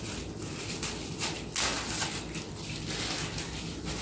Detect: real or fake real